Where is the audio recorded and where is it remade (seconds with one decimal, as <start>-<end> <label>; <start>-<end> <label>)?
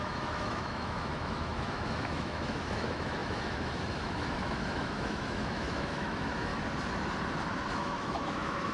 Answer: 0.0-6.5 remade; 6.5-7.7 recorded; 7.7-8.7 remade